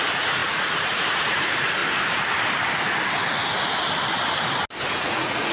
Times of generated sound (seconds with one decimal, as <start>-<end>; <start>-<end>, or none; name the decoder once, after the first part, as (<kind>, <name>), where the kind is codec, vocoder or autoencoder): 0.0-1.8 (vocoder, Vocos); 4.8-5.5